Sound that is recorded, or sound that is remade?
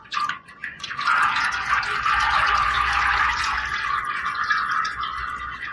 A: remade